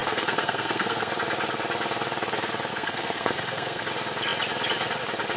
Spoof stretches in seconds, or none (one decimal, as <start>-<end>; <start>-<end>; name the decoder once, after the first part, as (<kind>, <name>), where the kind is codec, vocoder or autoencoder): 0.0-1.1 (codec, SNAC); 2.7-3.8